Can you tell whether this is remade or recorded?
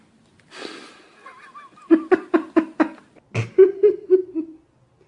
recorded